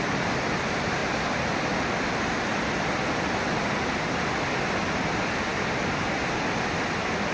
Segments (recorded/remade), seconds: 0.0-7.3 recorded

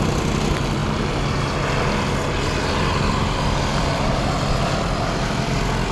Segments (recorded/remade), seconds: 0.0-5.9 recorded